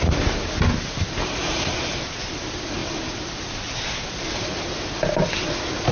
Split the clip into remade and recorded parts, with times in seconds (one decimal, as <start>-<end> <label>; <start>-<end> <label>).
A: 0.0-5.9 recorded